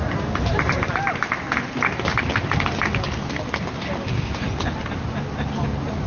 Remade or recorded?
recorded